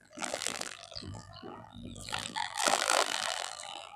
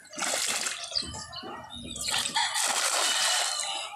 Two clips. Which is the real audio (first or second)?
second